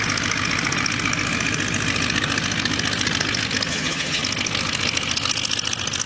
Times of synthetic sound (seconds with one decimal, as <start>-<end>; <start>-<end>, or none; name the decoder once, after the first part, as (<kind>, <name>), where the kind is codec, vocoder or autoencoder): 3.7-4.2 (vocoder, HiFi-GAN)